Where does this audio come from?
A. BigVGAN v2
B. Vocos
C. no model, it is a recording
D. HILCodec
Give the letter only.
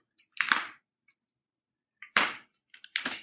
A